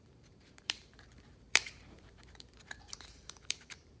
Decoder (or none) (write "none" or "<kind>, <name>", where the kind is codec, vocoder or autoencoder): vocoder, BigVGAN v2